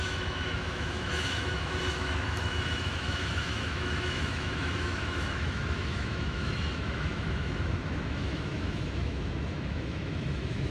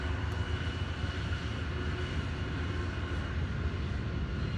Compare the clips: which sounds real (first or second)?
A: second